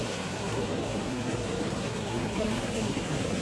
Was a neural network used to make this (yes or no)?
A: yes